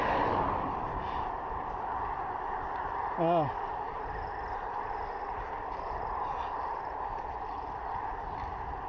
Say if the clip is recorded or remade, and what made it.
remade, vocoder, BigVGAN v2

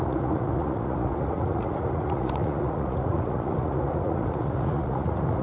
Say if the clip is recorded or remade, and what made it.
remade, vocoder, Vocos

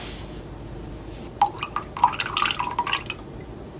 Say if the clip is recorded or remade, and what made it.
recorded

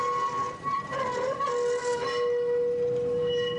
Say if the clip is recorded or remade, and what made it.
recorded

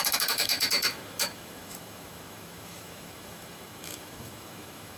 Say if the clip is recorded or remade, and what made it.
remade, autoencoder, DAC-VAE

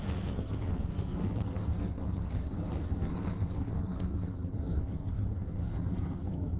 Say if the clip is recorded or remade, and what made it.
remade, codec, SNAC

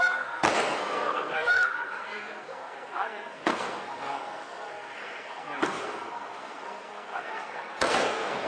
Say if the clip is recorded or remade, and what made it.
remade, codec, SNAC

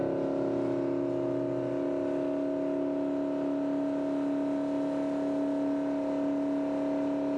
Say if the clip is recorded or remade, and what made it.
recorded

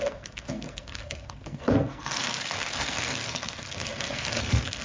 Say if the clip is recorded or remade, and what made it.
remade, codec, SNAC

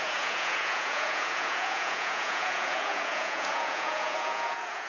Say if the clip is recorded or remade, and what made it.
remade, vocoder, Vocos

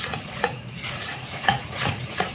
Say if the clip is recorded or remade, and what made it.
remade, vocoder, Vocos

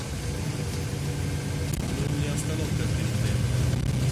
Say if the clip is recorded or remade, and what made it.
recorded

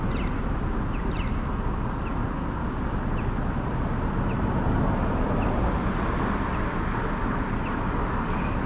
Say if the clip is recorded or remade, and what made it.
recorded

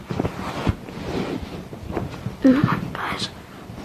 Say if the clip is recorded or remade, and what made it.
recorded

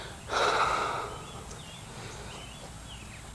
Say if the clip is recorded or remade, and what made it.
recorded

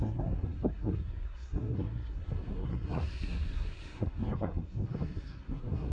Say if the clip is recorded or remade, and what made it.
remade, codec, SNAC